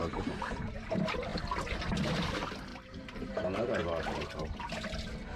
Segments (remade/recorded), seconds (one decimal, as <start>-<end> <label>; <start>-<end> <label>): 0.0-0.9 remade; 0.9-2.7 recorded; 2.7-3.3 remade; 3.3-5.4 recorded